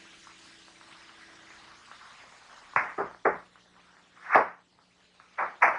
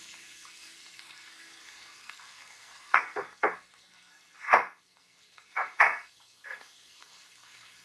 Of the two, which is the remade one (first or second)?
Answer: second